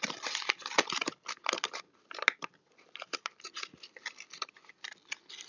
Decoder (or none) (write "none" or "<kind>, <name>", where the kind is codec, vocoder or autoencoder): none